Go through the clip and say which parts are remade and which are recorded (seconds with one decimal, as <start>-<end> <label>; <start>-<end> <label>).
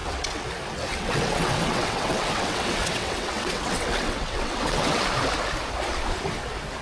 0.0-0.5 remade; 0.5-0.9 recorded; 0.9-5.0 remade; 5.0-6.8 recorded